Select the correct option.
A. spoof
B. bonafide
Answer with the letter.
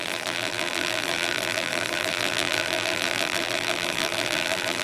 A